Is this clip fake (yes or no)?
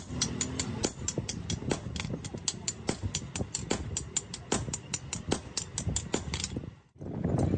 no